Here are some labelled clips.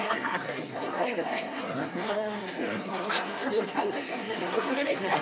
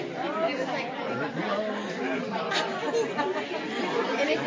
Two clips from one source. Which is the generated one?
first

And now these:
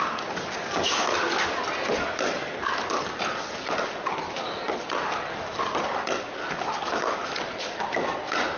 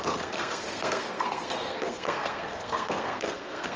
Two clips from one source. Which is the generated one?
second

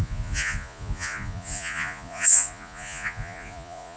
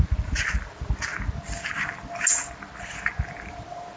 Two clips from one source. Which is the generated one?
first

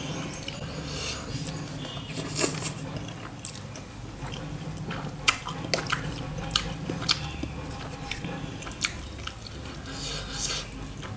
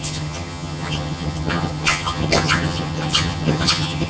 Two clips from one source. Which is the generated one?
second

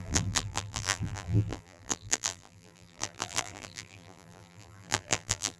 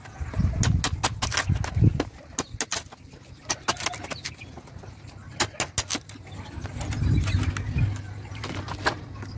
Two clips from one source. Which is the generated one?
first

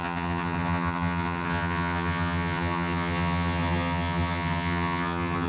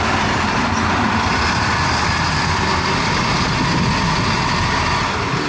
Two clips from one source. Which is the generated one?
first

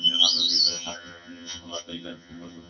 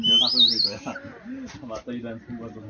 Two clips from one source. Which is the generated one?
first